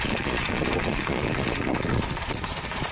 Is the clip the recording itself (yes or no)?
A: no